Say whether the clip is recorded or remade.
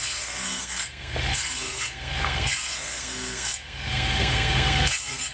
remade